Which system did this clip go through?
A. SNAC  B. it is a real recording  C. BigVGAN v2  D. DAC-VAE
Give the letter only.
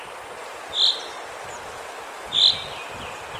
B